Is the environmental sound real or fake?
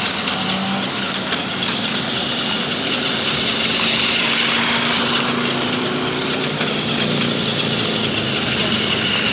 real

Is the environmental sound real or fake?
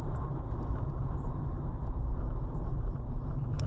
fake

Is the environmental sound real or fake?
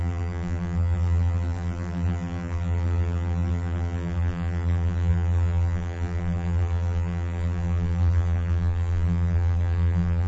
fake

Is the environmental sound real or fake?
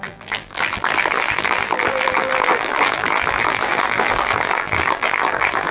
fake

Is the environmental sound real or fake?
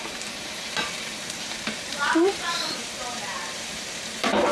fake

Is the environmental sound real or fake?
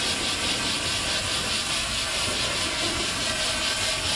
real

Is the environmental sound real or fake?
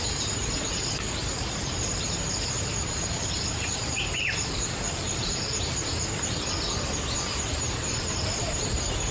fake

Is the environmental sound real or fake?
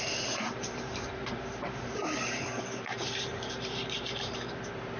fake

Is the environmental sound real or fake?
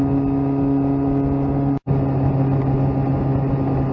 real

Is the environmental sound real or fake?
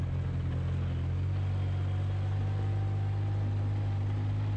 real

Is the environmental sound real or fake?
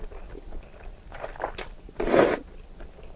fake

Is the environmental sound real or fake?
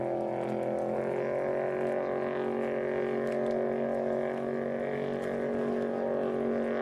real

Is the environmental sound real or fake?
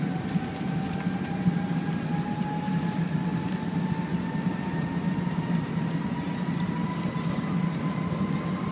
real